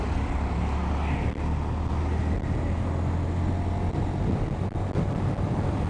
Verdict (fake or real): real